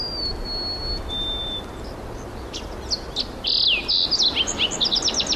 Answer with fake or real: real